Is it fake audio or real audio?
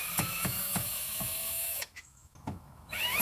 fake